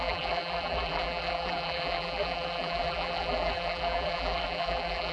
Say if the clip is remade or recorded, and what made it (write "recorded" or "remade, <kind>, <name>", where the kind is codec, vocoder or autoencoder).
remade, vocoder, BigVGAN v2